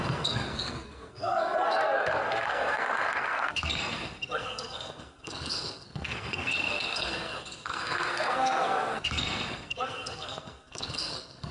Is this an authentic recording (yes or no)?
no